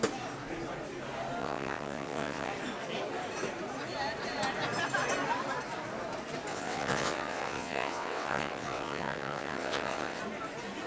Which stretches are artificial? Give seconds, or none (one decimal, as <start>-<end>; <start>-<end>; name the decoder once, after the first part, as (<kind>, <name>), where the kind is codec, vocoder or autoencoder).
1.4-2.5 (vocoder, WaveNeXt); 6.5-10.2